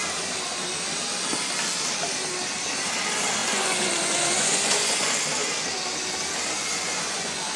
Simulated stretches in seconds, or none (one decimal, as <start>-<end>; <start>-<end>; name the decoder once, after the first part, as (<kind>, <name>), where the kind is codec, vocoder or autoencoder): 3.4-5.1 (vocoder, Vocos); 6.6-7.6